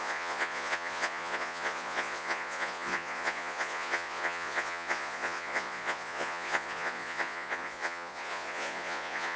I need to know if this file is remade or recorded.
remade